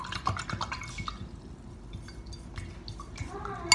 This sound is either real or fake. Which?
real